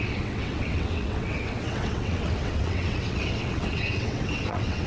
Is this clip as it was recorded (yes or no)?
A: no